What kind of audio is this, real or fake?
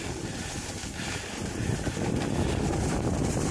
real